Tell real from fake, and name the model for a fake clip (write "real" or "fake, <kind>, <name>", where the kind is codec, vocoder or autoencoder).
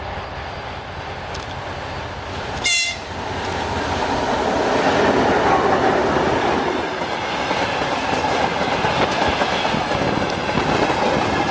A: real